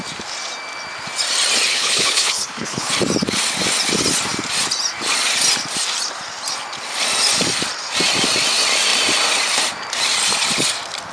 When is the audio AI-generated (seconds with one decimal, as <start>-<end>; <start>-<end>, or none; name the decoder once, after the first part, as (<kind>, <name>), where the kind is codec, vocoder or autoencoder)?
1.7-2.9 (codec, HILCodec)